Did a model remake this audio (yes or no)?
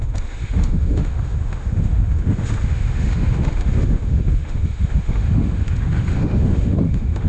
yes